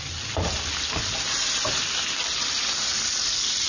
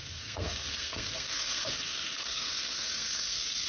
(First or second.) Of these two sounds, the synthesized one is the second